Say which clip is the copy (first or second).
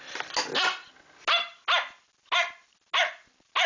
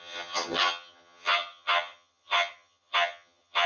second